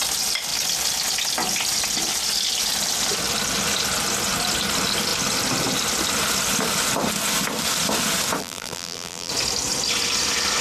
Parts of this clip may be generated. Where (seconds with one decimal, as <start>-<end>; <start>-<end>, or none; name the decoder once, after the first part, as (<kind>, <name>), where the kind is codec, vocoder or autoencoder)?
8.4-9.3 (vocoder, BigVGAN v2)